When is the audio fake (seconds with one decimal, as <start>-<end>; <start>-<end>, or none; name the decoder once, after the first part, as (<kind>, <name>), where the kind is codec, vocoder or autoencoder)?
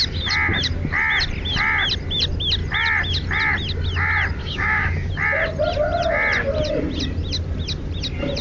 4.4-5.1 (codec, DAC)